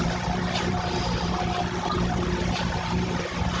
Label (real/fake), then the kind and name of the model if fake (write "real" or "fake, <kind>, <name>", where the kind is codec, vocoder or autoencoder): fake, vocoder, BigVGAN v2